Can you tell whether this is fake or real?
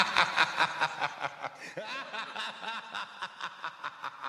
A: real